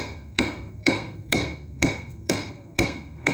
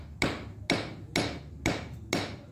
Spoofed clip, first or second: first